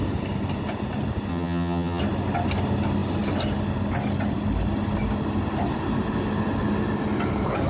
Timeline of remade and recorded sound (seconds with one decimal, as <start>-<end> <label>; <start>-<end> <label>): 0.0-1.3 recorded; 1.3-2.0 remade; 2.0-7.7 recorded